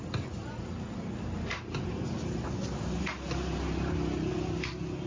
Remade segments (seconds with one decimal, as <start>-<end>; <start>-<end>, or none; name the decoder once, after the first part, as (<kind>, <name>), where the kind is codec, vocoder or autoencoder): none

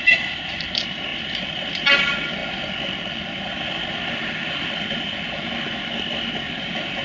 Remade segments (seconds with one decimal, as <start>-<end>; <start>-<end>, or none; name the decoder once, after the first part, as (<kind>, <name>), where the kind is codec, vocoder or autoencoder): 0.0-2.4 (vocoder, BigVGAN v2); 6.6-7.0

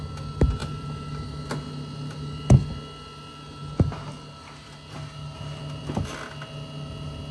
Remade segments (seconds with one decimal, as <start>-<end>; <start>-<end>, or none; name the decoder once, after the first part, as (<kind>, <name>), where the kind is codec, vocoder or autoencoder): 0.6-1.1 (vocoder, BigVGAN v2)

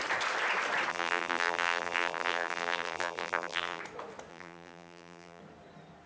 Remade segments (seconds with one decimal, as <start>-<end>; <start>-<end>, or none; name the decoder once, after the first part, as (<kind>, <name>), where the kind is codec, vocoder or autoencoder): 0.9-3.8 (vocoder, BigVGAN v2); 4.3-5.4

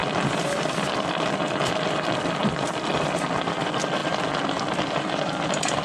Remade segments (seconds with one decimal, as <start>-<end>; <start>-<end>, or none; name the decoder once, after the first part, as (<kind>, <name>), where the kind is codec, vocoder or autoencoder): none

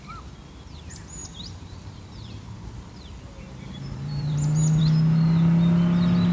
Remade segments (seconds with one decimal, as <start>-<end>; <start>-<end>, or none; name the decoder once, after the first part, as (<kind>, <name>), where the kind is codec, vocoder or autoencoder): 1.2-4.8 (vocoder, BigVGAN v2)

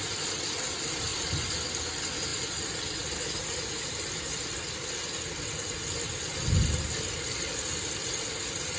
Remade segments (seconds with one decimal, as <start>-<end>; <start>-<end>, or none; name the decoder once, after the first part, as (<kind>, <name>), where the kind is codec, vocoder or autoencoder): none